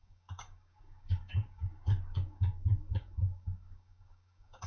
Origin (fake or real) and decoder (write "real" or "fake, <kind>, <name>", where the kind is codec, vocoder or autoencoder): fake, codec, DAC